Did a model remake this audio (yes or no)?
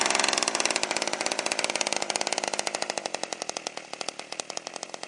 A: no